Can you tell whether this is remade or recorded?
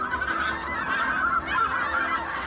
recorded